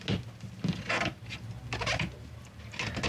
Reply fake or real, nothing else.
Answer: real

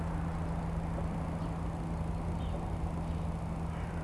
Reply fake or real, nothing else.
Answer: real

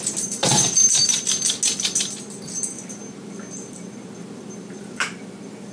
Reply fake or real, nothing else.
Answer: real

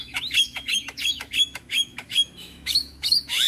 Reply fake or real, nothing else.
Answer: fake